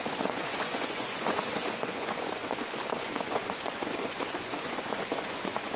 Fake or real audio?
fake